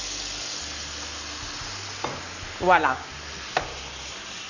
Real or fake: real